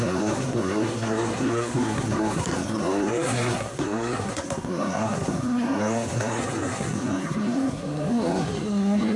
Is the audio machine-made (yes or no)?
yes